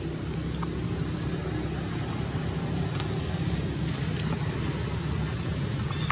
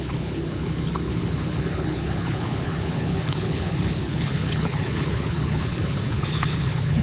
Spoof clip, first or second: second